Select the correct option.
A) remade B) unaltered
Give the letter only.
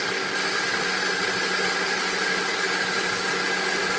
B